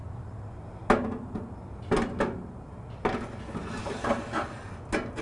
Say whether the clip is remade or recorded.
recorded